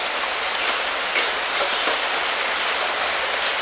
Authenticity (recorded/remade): recorded